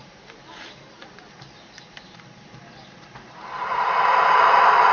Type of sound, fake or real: fake